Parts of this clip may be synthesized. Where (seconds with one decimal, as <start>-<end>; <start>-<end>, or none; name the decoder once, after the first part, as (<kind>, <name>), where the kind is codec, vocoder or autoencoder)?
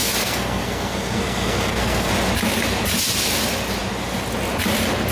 0.0-2.1 (codec, SNAC)